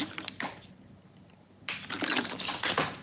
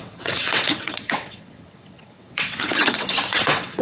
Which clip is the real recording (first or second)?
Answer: first